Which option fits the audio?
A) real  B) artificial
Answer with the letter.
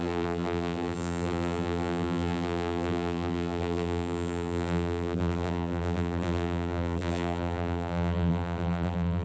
B